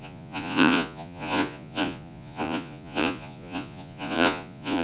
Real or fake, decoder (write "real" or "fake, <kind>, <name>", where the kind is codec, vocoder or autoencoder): fake, vocoder, Vocos